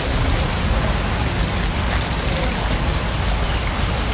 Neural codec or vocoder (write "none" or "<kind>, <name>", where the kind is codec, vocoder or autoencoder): none